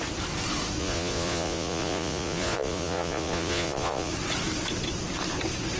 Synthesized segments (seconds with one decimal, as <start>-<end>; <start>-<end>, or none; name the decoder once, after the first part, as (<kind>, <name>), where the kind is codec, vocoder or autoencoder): 0.8-4.1 (vocoder, Vocos)